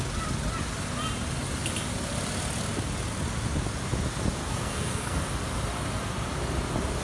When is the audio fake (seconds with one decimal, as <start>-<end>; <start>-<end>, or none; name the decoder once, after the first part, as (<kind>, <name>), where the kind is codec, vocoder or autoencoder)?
4.4-5.2 (codec, SNAC)